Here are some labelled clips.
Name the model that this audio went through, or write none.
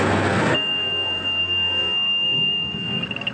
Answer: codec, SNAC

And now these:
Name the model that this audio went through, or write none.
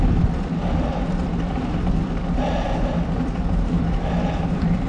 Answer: none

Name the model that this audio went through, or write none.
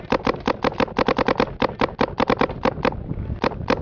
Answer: none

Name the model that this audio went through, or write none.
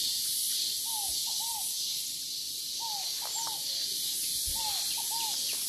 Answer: none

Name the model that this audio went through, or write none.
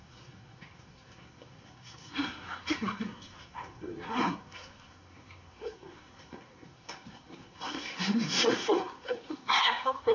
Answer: codec, SNAC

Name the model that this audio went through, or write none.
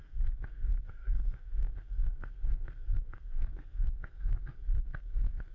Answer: codec, SNAC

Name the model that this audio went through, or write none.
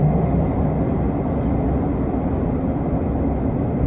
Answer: none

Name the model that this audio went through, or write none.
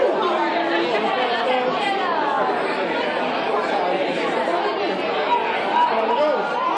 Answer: none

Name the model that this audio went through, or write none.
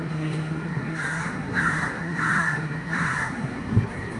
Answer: codec, SNAC